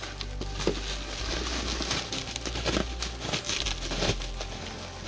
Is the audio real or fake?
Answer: real